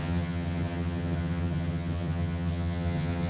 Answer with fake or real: fake